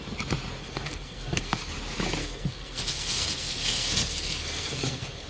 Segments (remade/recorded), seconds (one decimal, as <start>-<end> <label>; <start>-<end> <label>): 0.0-0.6 recorded; 0.6-1.7 remade; 1.7-2.2 recorded; 2.2-5.3 remade